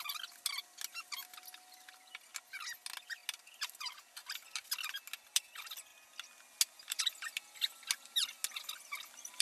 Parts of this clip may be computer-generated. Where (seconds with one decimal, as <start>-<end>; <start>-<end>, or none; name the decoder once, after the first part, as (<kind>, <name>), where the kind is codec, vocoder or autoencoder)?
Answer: none